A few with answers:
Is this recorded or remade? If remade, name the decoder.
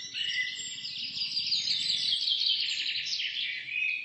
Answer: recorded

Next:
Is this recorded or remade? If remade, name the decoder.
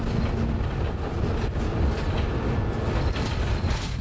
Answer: recorded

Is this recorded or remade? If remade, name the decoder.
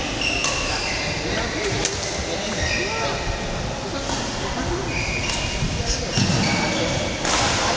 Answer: recorded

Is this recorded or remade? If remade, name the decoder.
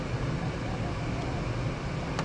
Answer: recorded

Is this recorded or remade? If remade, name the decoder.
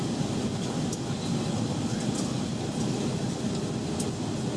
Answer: recorded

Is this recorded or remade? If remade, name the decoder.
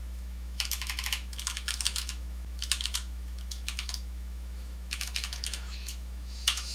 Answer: remade, autoencoder, DAC-VAE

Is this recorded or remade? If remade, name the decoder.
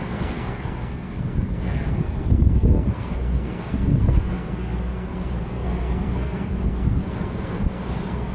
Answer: remade, codec, SNAC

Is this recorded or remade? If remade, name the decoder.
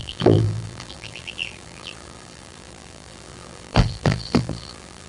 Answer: remade, vocoder, BigVGAN v2